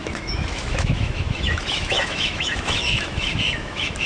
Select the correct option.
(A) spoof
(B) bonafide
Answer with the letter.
A